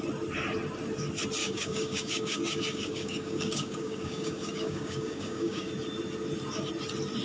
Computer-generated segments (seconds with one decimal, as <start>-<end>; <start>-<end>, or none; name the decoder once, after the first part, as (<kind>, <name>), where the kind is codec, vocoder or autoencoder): 1.4-5.7 (codec, DAC)